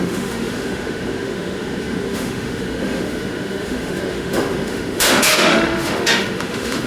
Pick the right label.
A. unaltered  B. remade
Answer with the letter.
B